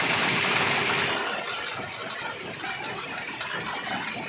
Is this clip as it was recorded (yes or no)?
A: yes